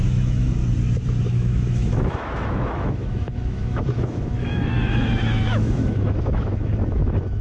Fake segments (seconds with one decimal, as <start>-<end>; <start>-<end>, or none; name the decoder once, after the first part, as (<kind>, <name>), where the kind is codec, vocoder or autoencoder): 0.0-0.6 (autoencoder, DAC-VAE); 1.3-7.4